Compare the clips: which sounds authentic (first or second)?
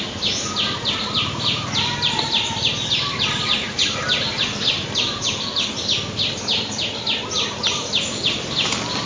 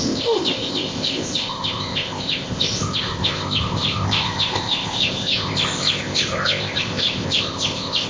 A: first